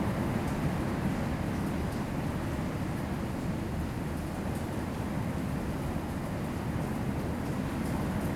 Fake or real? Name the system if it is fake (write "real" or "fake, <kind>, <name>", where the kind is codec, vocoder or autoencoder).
real